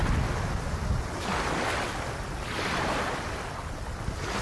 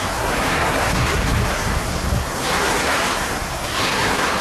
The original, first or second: first